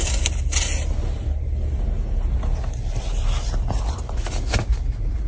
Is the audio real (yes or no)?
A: yes